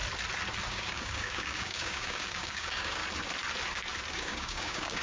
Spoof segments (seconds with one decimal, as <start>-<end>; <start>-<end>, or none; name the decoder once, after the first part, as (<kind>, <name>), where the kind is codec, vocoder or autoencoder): 0.7-3.0 (codec, DAC); 4.1-5.0